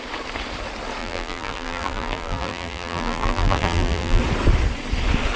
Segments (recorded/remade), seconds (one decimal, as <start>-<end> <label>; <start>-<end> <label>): 0.0-1.0 recorded; 1.0-4.2 remade; 4.2-5.4 recorded